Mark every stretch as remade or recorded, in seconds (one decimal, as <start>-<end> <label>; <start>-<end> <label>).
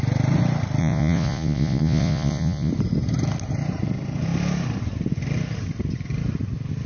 0.0-0.8 recorded; 0.8-2.7 remade; 2.7-6.9 recorded